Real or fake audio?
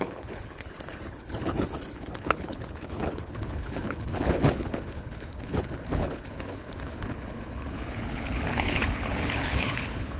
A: fake